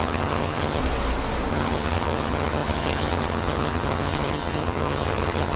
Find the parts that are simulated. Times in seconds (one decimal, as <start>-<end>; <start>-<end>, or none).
0.0-0.8; 1.5-5.6